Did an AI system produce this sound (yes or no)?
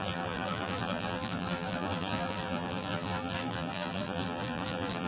yes